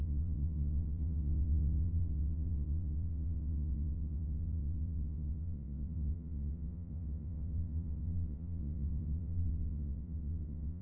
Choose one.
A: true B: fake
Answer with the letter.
B